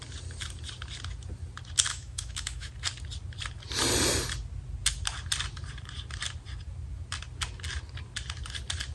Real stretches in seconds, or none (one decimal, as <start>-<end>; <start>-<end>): 0.0-1.9; 2.7-8.9